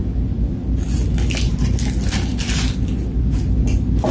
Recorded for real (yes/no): yes